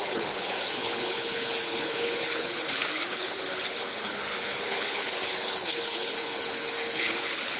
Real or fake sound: fake